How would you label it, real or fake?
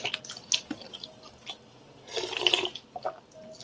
real